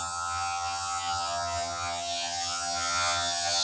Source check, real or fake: fake